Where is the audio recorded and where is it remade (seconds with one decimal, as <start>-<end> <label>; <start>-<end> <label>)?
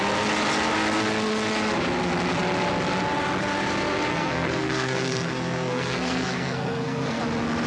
0.0-4.1 recorded; 4.1-7.2 remade; 7.2-7.7 recorded